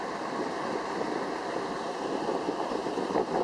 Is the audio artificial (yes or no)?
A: no